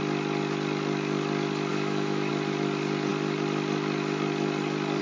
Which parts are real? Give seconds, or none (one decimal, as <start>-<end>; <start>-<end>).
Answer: 0.0-1.7; 2.3-5.0